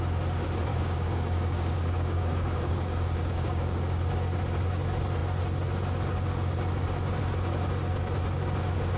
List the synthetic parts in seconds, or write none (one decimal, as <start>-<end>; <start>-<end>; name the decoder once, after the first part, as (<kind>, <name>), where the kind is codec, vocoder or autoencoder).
0.7-4.0 (codec, DAC)